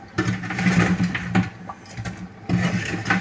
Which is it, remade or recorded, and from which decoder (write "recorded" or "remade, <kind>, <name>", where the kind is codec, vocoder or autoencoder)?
recorded